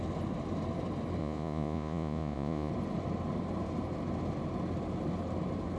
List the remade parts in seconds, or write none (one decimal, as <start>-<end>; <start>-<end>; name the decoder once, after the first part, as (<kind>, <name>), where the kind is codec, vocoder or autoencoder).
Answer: 1.2-2.7 (vocoder, Vocos)